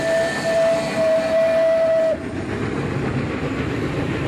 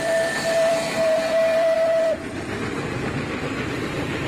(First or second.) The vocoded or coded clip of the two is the second